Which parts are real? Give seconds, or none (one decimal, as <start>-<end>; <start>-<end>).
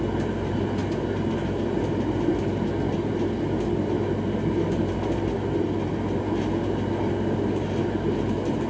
0.0-8.7